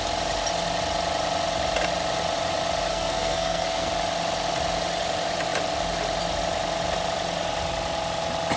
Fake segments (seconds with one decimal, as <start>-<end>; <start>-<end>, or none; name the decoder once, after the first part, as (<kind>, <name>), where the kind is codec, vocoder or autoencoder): 2.9-3.9 (codec, SNAC)